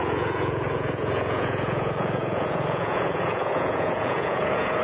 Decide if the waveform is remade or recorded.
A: remade